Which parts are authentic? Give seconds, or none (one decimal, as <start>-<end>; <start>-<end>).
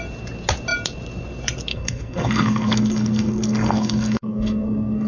0.0-1.7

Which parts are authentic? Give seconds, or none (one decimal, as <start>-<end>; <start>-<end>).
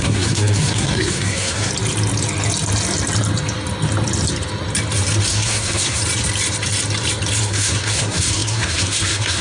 1.7-5.3; 6.0-7.4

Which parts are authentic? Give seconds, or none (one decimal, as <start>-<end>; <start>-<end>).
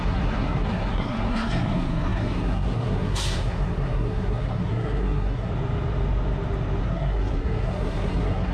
5.5-6.8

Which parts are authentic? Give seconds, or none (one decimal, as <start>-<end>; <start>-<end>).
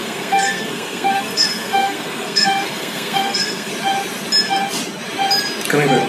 3.7-6.1